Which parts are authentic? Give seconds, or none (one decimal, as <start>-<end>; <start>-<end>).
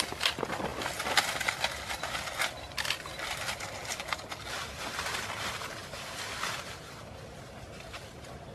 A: 0.0-8.5